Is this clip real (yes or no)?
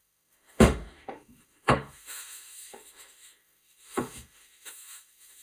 no